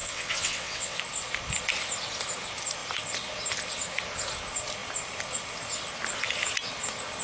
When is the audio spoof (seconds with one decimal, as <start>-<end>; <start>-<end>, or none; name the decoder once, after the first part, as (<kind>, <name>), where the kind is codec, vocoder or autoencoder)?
0.0-1.0 (vocoder, WaveNeXt)